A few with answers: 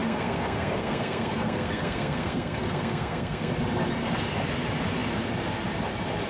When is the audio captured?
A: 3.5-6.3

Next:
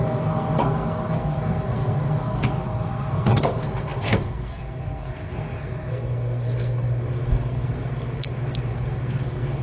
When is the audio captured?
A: none